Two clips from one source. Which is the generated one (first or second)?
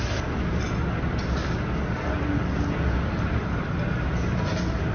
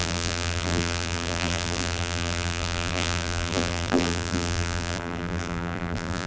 second